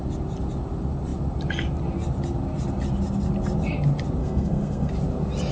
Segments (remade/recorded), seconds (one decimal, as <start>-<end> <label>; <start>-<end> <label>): 0.0-4.2 recorded; 4.2-4.9 remade; 4.9-5.5 recorded